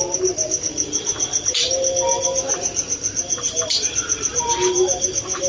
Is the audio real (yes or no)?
yes